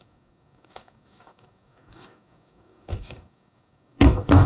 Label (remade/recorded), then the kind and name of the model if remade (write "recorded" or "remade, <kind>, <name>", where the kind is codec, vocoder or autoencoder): remade, codec, DAC